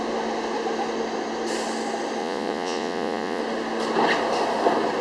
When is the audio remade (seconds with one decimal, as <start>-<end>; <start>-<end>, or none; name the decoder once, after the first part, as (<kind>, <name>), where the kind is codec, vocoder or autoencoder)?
2.2-3.4 (vocoder, Vocos)